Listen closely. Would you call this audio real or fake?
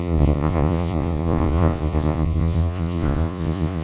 fake